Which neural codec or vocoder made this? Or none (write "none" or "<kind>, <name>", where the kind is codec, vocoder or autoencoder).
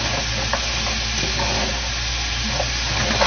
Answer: none